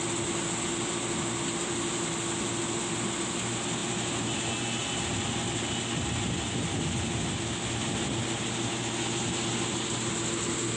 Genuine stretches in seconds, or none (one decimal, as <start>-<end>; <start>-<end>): 0.0-10.8